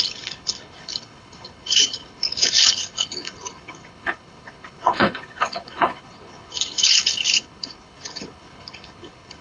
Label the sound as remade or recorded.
remade